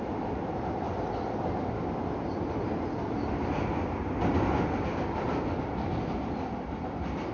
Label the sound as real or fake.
real